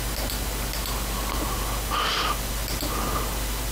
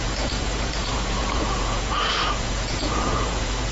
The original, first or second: first